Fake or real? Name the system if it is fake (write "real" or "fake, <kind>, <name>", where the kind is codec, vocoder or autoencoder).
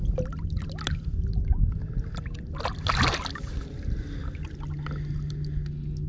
real